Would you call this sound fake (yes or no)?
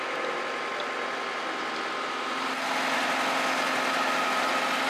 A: no